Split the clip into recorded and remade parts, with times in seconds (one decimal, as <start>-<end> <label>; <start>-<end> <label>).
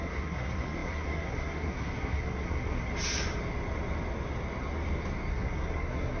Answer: 0.0-2.9 remade; 2.9-5.3 recorded; 5.3-6.2 remade